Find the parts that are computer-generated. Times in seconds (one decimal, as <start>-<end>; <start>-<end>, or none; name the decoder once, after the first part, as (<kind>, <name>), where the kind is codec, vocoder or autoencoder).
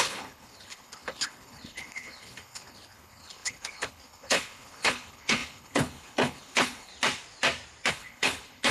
0.0-6.9 (codec, HILCodec); 7.9-8.7